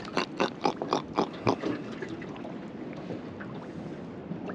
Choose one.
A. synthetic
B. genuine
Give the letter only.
B